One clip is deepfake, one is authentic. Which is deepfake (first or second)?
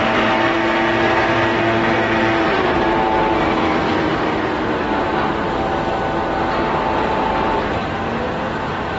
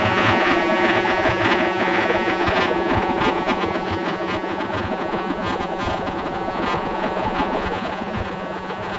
second